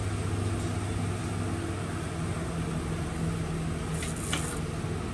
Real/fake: real